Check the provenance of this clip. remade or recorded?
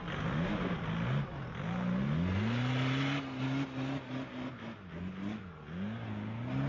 recorded